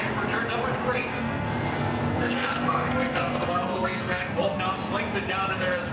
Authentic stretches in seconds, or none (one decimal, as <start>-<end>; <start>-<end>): 0.0-1.1; 4.6-5.9